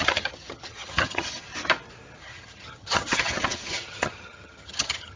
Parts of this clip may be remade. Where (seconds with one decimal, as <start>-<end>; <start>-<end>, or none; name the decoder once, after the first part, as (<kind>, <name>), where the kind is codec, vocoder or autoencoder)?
0.0-1.5 (vocoder, HiFi-GAN); 2.2-5.2